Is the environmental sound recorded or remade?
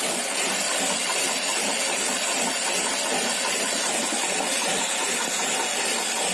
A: recorded